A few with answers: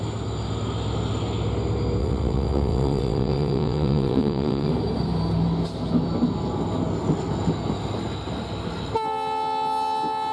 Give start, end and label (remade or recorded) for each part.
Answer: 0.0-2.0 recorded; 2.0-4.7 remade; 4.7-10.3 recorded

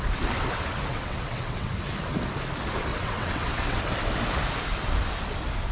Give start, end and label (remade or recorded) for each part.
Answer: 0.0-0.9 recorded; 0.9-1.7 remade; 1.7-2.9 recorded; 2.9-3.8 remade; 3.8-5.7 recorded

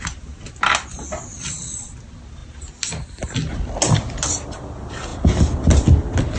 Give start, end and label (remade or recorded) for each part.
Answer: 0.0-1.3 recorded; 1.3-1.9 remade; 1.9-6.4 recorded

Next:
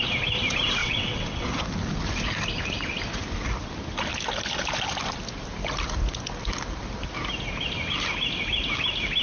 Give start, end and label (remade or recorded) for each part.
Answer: 0.0-0.8 recorded; 0.8-1.6 remade; 1.6-9.2 recorded

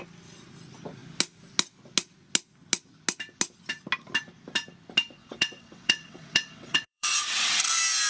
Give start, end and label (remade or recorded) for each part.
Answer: 0.0-5.2 recorded; 5.2-7.6 remade; 7.6-8.1 recorded

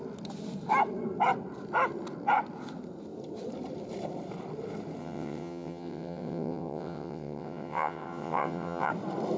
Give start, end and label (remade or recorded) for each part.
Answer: 0.0-5.0 recorded; 5.0-8.9 remade; 8.9-9.4 recorded

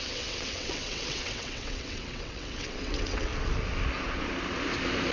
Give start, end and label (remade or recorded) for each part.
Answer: 0.0-3.3 remade; 3.3-5.1 recorded

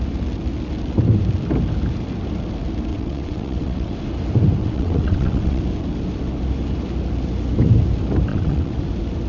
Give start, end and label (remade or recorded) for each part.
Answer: 0.0-2.9 recorded; 2.9-3.9 remade; 3.9-4.6 recorded; 4.6-5.6 remade; 5.6-8.3 recorded; 8.3-8.8 remade; 8.8-9.3 recorded